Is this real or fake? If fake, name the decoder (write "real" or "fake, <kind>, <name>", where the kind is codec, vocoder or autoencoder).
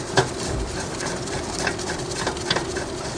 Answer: fake, vocoder, BigVGAN v2